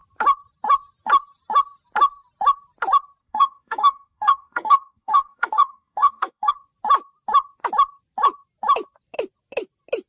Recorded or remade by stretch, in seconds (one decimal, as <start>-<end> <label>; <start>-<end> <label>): 0.0-3.2 recorded; 3.2-6.5 remade; 6.5-10.1 recorded